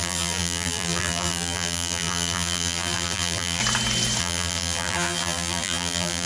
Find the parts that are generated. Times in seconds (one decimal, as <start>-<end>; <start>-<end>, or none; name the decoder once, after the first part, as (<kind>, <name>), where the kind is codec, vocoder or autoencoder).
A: 0.0-3.6 (vocoder, BigVGAN v2); 4.2-6.3